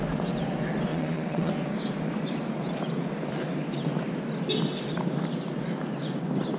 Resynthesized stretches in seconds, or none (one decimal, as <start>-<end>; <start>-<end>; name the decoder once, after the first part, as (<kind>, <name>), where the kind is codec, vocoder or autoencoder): 0.9-1.5 (vocoder, WaveNeXt)